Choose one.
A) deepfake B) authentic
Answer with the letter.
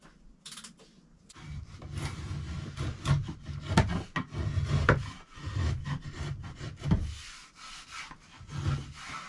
B